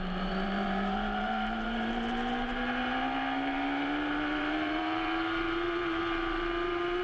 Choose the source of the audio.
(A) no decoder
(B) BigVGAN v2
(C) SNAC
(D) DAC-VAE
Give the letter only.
B